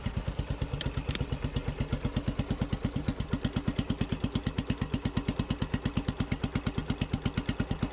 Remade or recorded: recorded